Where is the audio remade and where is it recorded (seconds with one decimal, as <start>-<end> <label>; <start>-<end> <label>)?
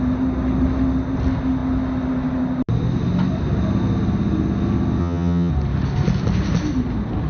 0.0-5.0 recorded; 5.0-5.5 remade; 5.5-7.3 recorded